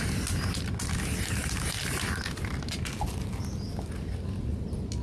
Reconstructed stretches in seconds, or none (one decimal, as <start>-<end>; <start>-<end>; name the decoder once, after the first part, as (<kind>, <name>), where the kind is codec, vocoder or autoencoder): none